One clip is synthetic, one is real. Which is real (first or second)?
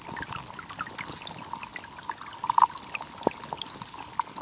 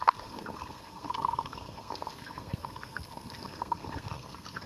first